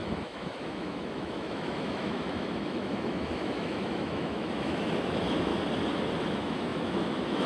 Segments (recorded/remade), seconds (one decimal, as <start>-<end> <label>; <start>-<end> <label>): 0.0-5.5 remade; 5.5-6.3 recorded; 6.3-7.5 remade